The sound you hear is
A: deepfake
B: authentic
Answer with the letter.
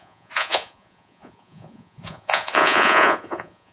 A